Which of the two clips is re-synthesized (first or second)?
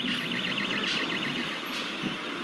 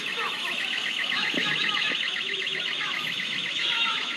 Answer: second